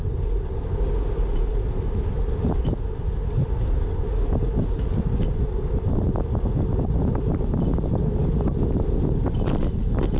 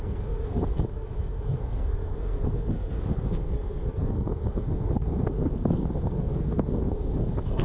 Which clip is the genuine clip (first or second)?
first